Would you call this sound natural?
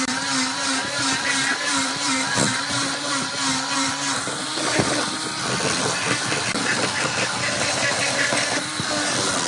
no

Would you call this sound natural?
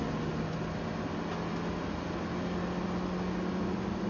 yes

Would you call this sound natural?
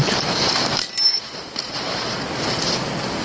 yes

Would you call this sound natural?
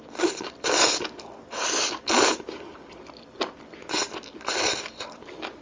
yes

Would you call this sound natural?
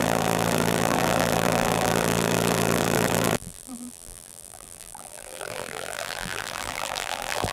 no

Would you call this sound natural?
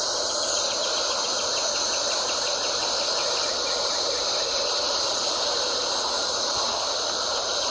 no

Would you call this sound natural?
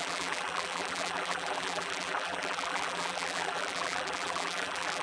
no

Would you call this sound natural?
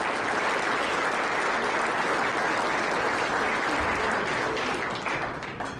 yes